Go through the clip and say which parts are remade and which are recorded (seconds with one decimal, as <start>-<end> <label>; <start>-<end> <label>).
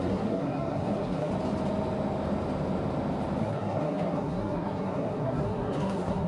0.0-1.3 remade; 1.3-3.4 recorded; 3.4-6.3 remade